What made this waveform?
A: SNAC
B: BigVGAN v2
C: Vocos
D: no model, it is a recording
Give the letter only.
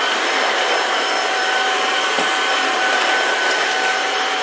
B